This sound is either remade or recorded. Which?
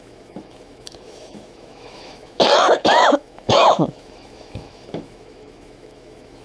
remade